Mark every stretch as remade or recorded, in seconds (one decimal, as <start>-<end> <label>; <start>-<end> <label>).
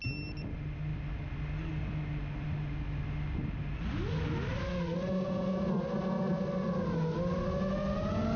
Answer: 0.0-8.4 recorded